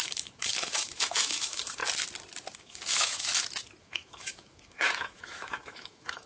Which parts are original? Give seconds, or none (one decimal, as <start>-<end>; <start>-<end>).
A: 1.8-2.6; 3.3-3.8